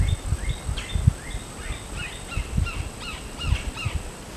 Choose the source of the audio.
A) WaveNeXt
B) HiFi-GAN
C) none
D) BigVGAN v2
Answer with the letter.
C